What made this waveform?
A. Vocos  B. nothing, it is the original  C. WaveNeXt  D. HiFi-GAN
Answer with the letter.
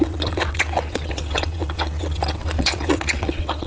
C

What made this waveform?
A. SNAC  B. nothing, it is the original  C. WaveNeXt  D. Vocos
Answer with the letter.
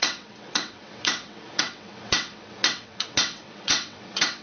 C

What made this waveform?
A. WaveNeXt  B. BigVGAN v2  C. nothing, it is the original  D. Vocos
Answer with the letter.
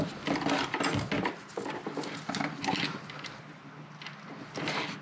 C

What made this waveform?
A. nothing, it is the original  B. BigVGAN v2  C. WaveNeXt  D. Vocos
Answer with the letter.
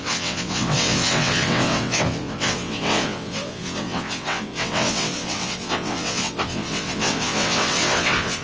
C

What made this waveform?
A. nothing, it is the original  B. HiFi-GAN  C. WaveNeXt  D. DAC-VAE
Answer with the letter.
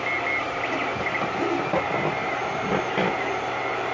A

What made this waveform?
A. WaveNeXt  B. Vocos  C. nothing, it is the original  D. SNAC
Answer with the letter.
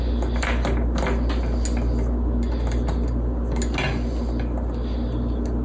C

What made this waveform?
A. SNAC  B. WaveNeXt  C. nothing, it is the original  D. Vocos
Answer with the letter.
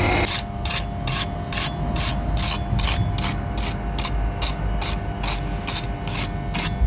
C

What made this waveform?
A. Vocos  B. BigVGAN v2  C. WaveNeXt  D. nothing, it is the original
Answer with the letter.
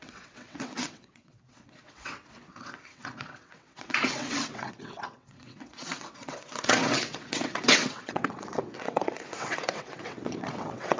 C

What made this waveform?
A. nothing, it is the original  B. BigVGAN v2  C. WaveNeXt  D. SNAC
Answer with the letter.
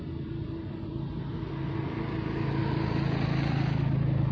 A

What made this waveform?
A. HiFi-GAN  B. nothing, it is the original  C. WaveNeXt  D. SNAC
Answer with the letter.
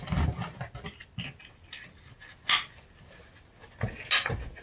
B